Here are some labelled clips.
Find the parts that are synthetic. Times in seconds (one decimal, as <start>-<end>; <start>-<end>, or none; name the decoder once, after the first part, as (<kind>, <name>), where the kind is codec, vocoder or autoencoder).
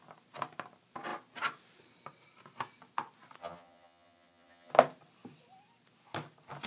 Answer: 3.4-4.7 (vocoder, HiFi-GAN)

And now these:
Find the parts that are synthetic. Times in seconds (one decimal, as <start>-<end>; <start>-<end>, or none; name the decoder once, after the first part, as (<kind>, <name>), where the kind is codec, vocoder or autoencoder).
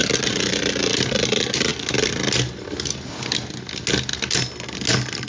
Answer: none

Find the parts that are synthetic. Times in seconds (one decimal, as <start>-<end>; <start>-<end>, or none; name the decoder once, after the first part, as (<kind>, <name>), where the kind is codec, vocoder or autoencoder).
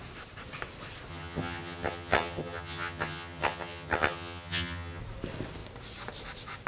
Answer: 1.1-5.0 (vocoder, HiFi-GAN)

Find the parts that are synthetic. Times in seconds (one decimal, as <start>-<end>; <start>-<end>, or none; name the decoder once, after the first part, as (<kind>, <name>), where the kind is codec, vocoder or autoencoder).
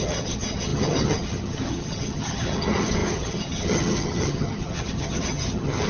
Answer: 0.0-5.9 (vocoder, HiFi-GAN)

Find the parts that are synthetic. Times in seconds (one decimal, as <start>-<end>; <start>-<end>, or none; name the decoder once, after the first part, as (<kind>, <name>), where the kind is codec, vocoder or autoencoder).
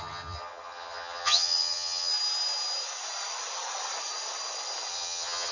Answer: 0.0-2.1 (vocoder, HiFi-GAN); 4.9-5.5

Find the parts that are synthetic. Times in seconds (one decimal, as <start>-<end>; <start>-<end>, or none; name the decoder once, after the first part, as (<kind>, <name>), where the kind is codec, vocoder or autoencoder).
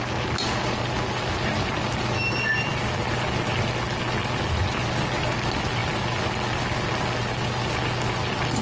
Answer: none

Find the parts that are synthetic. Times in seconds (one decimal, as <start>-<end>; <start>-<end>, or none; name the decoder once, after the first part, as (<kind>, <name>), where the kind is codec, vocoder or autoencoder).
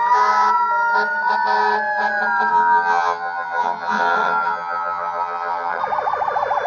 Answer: 2.5-5.8 (vocoder, HiFi-GAN)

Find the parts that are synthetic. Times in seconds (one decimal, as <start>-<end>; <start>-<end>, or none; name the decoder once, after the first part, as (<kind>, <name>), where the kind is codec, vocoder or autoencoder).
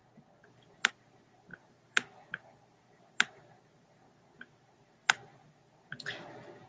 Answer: none